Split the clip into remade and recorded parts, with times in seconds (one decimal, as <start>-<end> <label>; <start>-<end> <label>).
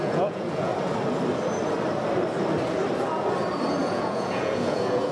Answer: 0.0-0.7 remade; 0.7-3.8 recorded; 3.8-5.1 remade